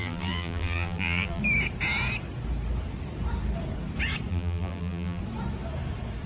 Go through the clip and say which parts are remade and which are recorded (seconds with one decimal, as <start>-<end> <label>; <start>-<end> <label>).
0.0-1.4 remade; 1.4-4.3 recorded; 4.3-5.2 remade; 5.2-6.3 recorded